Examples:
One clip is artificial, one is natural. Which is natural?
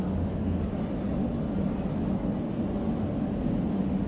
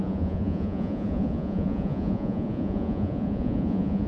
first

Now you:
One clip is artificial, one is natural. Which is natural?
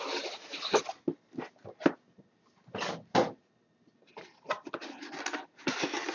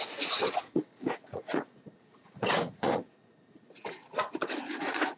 first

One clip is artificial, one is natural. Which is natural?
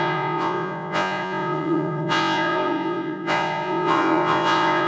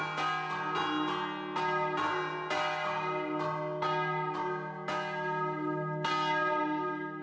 second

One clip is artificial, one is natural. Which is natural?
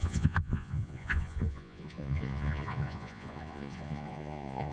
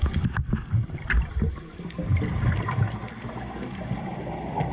second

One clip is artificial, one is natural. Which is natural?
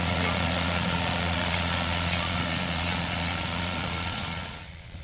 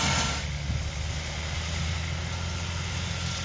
second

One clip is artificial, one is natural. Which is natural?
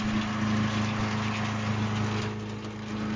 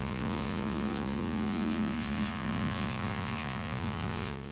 first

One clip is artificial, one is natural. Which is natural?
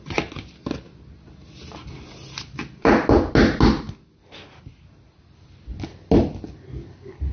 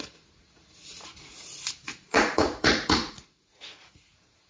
first